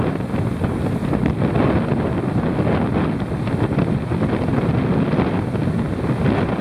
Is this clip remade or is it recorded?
recorded